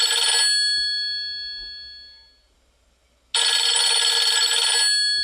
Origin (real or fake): real